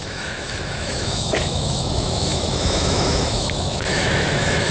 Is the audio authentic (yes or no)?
no